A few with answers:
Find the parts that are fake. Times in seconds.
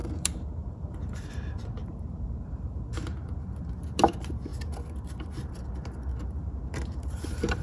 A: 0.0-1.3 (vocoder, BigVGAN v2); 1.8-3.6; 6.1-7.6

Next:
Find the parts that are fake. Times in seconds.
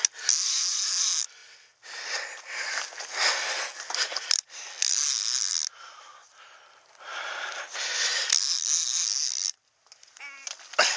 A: none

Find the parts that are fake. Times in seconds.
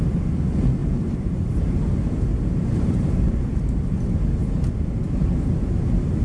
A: 0.8-3.8 (vocoder, BigVGAN v2)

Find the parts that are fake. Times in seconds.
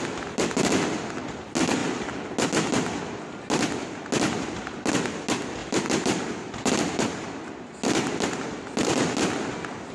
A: 5.6-6.8 (vocoder, BigVGAN v2)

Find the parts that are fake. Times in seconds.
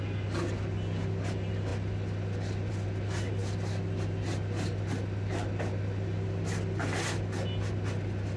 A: none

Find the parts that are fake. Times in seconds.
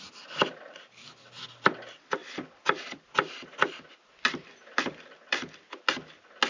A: none